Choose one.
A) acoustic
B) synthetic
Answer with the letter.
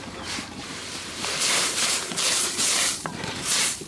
B